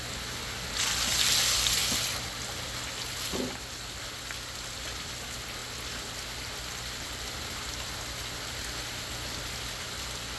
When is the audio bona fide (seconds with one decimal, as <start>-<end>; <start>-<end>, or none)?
0.0-10.4